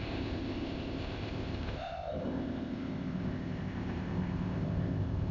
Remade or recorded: remade